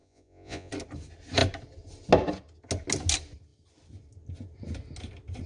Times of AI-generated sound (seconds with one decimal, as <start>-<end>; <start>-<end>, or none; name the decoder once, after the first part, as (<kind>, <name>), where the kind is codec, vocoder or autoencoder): 0.0-0.7 (vocoder, Vocos)